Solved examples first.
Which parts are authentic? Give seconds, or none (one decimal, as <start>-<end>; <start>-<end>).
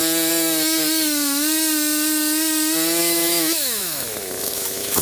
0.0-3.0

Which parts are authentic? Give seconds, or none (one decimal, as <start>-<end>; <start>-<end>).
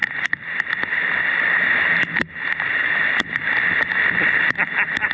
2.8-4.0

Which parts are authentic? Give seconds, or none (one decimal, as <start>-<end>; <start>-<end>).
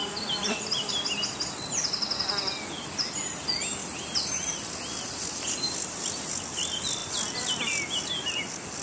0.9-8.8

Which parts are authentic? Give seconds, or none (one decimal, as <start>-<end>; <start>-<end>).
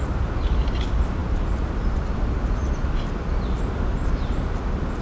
0.0-5.0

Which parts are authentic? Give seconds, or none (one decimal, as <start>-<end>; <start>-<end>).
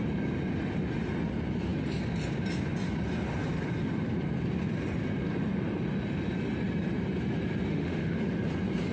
0.0-7.7; 8.2-8.9